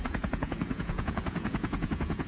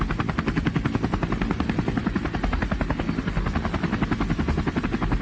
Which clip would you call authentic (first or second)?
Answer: second